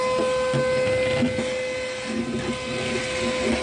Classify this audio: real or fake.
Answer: real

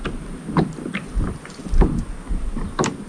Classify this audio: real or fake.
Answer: real